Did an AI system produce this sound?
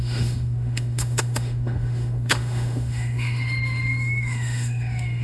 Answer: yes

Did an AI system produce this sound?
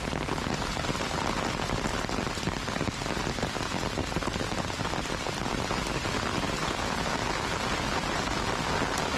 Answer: no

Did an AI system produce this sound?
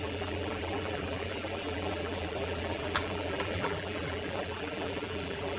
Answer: yes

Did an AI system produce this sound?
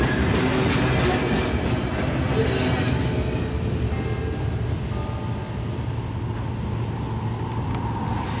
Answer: no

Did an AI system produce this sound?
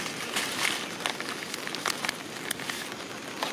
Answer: no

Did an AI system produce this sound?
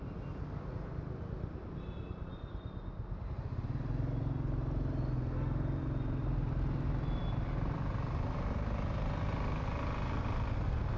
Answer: no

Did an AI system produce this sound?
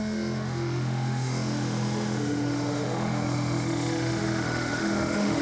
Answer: yes